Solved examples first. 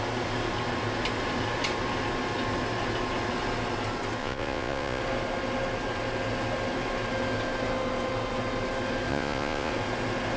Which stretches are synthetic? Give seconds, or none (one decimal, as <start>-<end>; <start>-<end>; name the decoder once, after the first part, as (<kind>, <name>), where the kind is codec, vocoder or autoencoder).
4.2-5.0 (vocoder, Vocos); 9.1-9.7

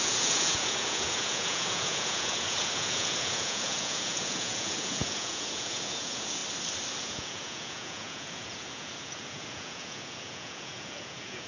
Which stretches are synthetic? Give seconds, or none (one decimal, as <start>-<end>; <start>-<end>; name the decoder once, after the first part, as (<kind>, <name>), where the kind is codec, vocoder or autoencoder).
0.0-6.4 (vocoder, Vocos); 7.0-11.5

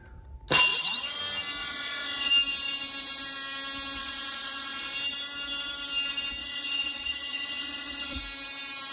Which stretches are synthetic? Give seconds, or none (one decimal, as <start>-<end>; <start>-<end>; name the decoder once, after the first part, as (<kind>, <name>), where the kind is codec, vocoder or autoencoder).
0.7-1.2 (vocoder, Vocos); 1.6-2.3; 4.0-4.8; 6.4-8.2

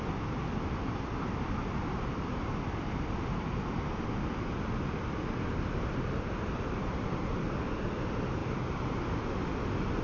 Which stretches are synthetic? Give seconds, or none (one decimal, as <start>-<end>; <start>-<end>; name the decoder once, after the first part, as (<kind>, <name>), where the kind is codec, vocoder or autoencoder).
none

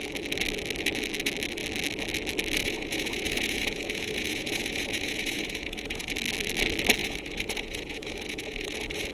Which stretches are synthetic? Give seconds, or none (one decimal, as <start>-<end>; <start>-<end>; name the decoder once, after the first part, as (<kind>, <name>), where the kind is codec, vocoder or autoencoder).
2.6-6.1 (vocoder, Vocos); 7.0-9.1

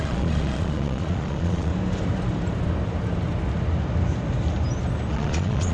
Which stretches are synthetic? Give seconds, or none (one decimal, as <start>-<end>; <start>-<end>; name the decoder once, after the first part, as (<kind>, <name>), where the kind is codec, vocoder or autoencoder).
0.0-1.7 (vocoder, Vocos); 5.1-5.7